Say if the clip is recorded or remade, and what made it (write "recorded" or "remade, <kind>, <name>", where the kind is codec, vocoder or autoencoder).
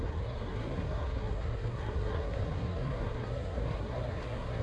remade, codec, SNAC